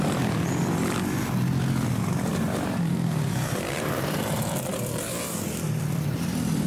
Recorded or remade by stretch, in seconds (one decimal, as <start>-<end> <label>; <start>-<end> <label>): 0.0-2.3 recorded; 2.3-6.3 remade; 6.3-6.7 recorded